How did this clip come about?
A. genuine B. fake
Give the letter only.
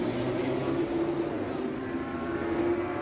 A